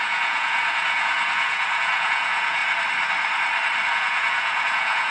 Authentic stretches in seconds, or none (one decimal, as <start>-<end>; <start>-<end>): 2.6-3.9